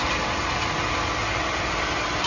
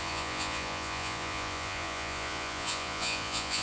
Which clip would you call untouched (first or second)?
first